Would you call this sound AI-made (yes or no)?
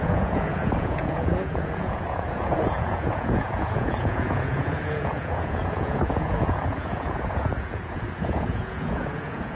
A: yes